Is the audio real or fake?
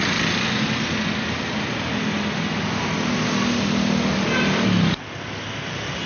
real